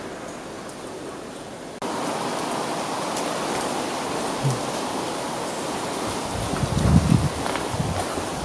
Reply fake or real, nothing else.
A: real